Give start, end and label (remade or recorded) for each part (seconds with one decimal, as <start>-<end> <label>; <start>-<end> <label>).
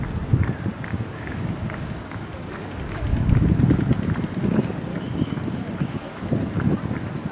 0.0-0.9 recorded; 0.9-3.3 remade; 3.3-4.9 recorded; 4.9-6.7 remade; 6.7-7.3 recorded